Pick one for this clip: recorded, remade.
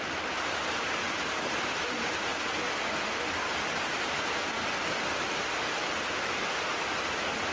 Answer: recorded